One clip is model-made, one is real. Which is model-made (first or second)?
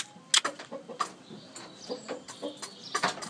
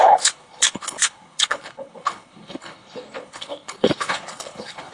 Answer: second